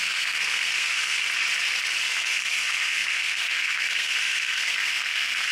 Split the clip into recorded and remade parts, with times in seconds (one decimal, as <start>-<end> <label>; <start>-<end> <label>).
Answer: 0.0-1.2 remade; 1.2-2.0 recorded; 2.0-5.5 remade